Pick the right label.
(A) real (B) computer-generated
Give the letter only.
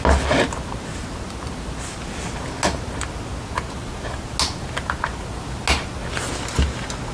A